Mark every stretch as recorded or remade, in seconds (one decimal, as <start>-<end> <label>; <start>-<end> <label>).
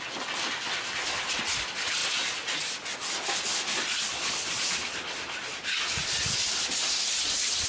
0.0-7.7 recorded